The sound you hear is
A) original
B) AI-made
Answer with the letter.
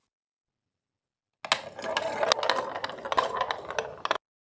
A